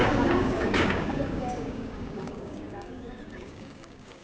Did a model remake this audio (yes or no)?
yes